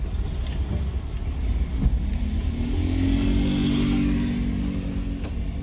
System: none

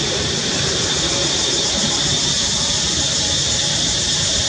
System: none